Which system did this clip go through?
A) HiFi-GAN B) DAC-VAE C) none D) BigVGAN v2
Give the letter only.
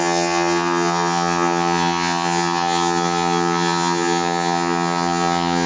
A